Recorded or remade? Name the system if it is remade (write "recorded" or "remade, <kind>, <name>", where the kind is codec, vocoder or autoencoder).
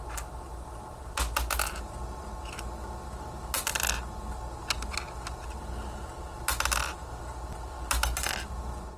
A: recorded